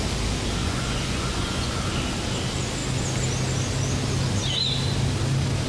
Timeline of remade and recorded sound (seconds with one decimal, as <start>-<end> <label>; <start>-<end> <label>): 0.0-0.6 recorded; 0.6-1.7 remade; 1.7-5.7 recorded